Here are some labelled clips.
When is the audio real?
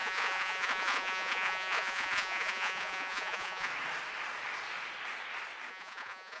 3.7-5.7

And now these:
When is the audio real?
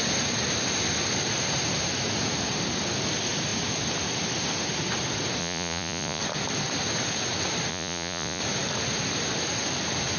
0.0-5.4; 6.2-7.7; 8.4-10.2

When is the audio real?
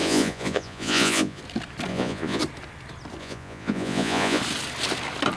1.4-1.9; 2.4-3.2; 4.4-5.4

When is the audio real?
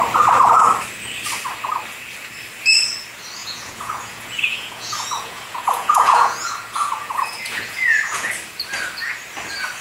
0.0-3.4; 8.3-9.8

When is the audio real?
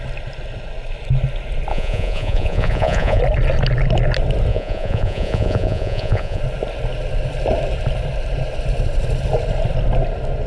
0.0-1.7; 3.2-4.5; 6.4-10.5